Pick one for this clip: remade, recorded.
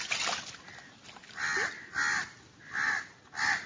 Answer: recorded